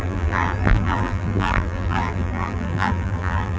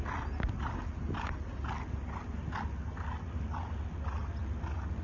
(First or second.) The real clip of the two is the second